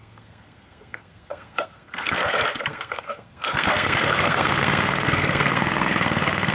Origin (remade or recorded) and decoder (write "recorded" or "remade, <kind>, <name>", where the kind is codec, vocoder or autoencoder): remade, codec, SNAC